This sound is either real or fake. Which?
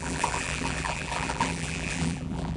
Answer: fake